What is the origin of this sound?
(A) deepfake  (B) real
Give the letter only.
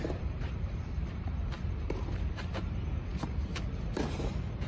A